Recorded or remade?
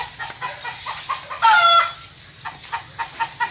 recorded